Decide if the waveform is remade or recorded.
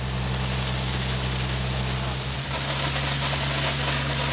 recorded